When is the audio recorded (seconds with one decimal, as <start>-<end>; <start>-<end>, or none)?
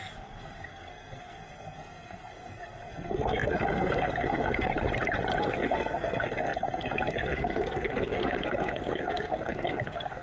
4.7-5.4